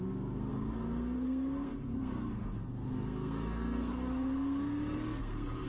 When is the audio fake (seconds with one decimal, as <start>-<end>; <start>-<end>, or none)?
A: 0.0-5.7